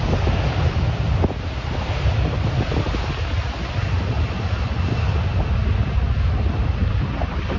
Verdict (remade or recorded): recorded